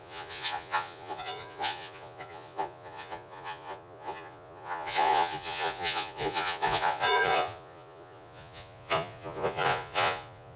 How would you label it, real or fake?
fake